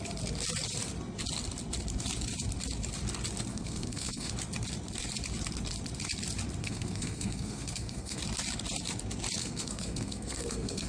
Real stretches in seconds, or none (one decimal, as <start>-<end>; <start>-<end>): 0.0-3.5; 4.3-6.6; 8.2-9.4